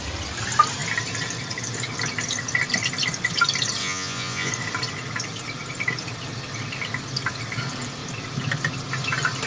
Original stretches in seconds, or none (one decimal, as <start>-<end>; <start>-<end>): 0.0-3.8; 4.5-9.5